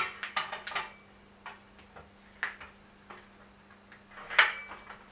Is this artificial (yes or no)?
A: no